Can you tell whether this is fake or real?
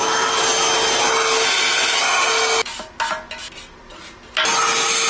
real